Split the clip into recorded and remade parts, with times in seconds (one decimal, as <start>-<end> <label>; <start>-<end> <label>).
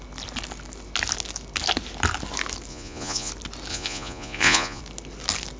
0.0-2.7 recorded; 2.7-3.3 remade; 3.3-3.7 recorded; 3.7-4.8 remade; 4.8-5.6 recorded